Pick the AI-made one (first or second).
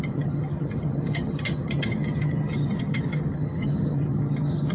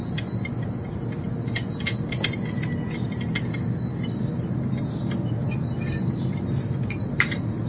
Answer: first